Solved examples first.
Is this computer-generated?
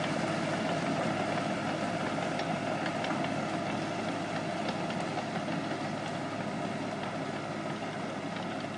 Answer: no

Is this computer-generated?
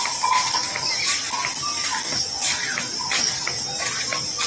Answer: no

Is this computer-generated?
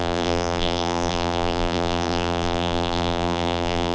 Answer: yes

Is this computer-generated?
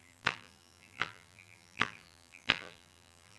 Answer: yes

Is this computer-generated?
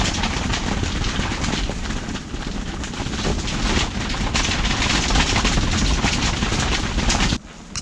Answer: no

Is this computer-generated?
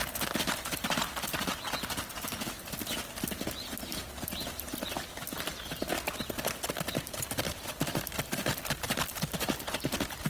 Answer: no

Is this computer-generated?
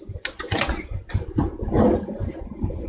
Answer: no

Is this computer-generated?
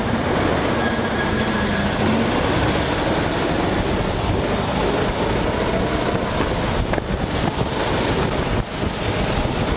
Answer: no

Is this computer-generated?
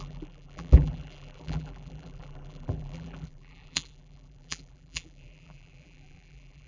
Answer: yes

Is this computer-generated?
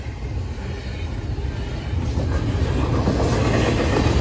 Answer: no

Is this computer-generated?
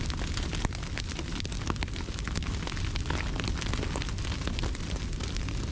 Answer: no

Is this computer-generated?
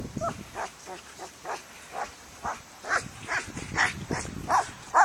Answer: yes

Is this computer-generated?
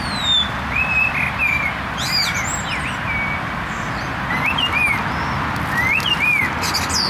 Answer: no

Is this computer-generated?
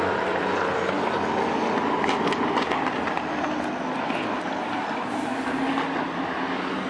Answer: no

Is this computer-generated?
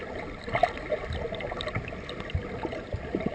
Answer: yes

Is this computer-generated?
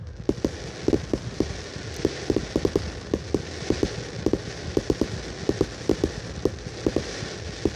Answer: no